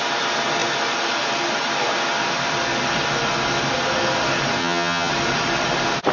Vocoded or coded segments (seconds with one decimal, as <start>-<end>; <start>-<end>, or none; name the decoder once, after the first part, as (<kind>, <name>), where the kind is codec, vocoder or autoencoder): 4.6-5.1 (vocoder, HiFi-GAN)